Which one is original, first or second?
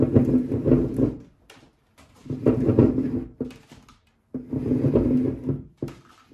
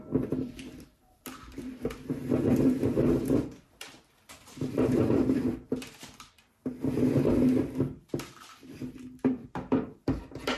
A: first